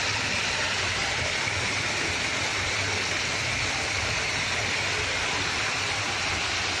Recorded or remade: recorded